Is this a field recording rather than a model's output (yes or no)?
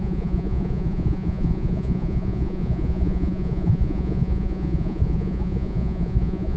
no